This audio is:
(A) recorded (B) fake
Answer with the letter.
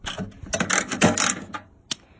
A